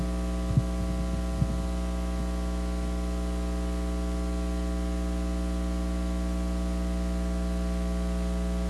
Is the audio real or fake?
real